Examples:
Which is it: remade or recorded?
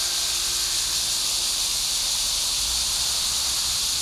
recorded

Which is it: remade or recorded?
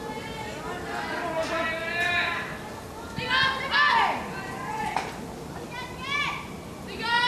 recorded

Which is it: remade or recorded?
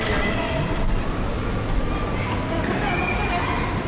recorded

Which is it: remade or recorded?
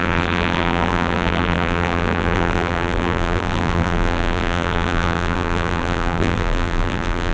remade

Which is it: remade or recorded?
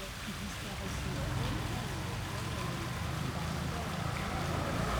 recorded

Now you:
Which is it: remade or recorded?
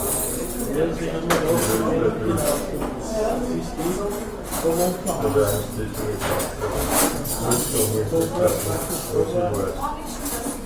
recorded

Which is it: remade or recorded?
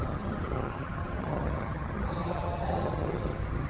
remade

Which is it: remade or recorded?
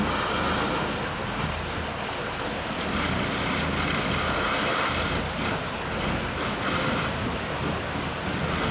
recorded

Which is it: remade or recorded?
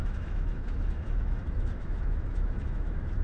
remade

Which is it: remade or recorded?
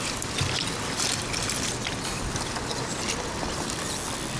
recorded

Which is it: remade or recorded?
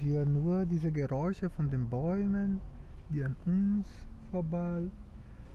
remade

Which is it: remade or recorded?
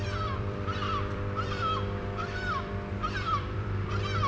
remade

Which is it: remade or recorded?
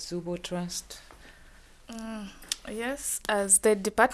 recorded